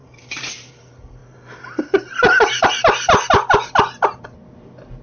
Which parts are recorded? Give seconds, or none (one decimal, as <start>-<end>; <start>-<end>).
0.7-5.0